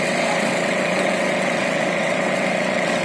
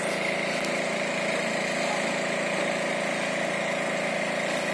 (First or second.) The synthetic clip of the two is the first